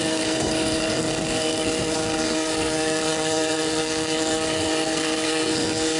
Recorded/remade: remade